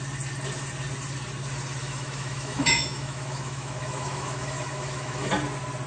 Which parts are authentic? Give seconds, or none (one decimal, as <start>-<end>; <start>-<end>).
0.0-1.8; 5.3-5.9